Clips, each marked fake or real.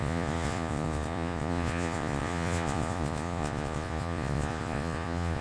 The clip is fake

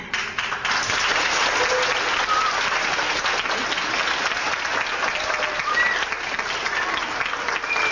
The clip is real